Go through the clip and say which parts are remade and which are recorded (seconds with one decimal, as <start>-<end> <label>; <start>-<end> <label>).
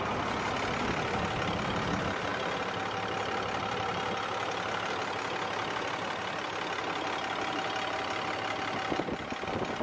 0.0-9.8 recorded